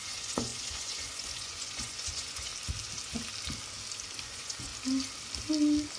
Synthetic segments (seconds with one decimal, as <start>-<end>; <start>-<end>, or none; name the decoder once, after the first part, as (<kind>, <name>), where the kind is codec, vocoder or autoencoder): 0.0-2.5 (vocoder, Vocos); 4.2-4.7